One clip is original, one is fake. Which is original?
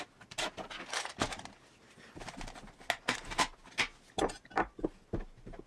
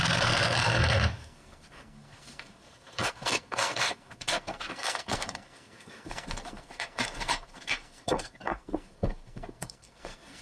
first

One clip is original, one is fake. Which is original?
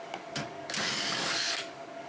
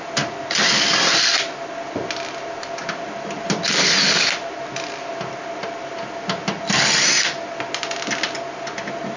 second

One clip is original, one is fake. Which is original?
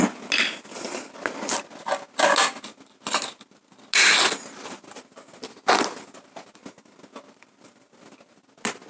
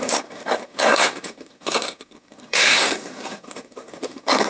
first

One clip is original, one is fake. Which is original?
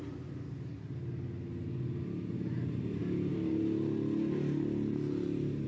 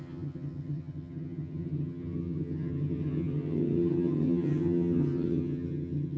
first